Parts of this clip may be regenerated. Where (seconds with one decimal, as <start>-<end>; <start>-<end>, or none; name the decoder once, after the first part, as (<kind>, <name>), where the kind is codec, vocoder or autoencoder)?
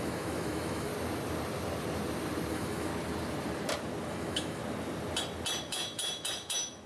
0.0-0.9 (autoencoder, DAC-VAE); 2.5-2.9; 4.1-4.6; 5.6-6.9